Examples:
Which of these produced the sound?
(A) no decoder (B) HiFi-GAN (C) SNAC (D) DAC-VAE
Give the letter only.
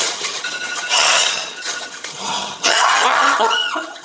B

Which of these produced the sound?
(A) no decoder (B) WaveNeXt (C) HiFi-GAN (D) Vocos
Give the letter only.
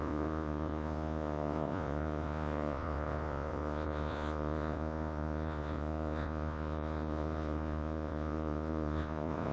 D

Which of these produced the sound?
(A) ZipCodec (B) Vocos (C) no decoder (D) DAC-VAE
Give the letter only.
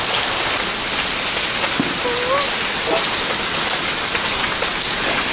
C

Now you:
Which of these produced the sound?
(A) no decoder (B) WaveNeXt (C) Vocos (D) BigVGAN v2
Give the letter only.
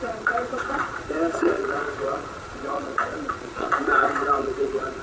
C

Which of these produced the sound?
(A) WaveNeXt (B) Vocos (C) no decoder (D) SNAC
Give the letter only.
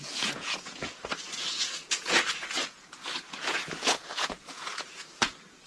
B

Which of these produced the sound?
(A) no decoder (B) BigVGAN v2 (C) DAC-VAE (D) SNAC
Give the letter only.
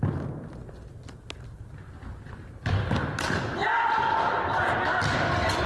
A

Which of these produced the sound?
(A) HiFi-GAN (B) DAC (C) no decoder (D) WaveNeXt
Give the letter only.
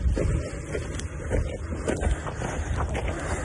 C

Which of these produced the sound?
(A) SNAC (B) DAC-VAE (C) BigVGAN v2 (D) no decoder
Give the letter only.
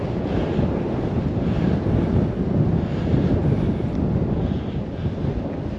D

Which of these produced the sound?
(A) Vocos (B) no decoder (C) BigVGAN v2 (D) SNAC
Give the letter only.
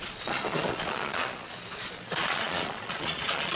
A